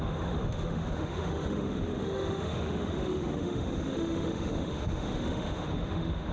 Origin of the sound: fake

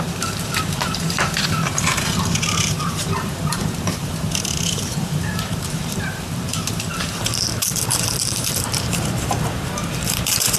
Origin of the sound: fake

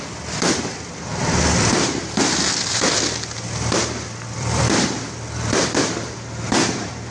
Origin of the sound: fake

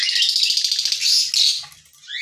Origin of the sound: real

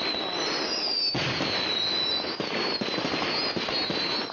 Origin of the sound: real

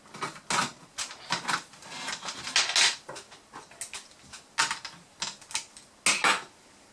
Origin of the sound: real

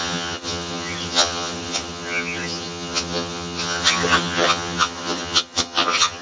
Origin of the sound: fake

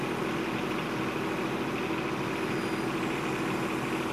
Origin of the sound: real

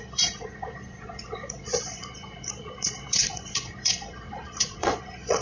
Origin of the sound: fake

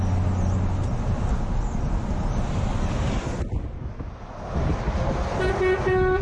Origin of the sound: real